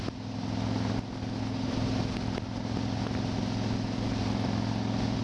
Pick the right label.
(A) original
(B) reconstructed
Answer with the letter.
A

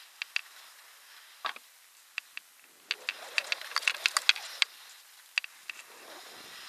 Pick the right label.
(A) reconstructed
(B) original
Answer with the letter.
B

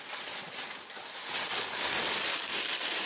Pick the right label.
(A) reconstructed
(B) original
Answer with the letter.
B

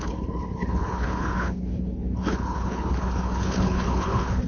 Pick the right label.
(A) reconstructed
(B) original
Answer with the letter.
A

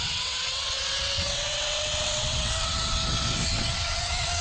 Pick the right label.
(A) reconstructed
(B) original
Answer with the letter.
A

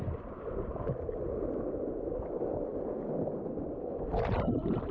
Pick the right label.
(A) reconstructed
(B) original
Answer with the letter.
B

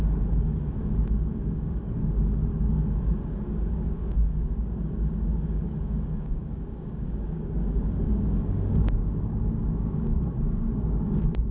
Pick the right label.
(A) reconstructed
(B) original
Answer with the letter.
A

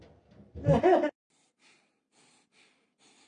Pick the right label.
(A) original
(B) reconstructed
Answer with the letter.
A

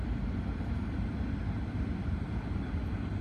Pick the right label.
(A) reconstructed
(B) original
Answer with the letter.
B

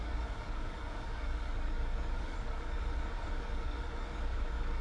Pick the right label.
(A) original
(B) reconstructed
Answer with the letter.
B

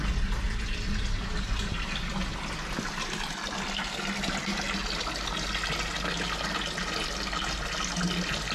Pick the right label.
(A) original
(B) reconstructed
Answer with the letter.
A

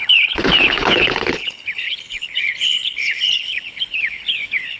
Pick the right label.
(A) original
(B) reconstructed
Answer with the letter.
B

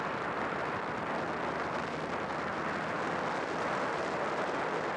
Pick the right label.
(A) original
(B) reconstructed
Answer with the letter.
A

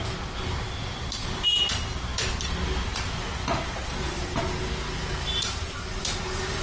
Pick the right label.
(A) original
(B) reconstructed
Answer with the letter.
A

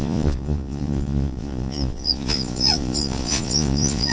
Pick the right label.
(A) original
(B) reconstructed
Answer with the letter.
B